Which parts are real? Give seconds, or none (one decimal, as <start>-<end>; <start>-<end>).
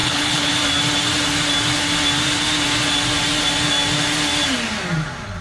0.5-5.4